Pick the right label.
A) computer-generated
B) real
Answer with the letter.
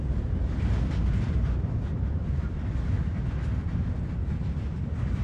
B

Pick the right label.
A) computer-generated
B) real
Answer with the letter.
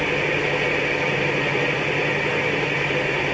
B